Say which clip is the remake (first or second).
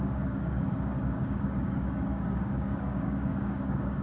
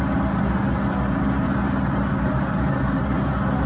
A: first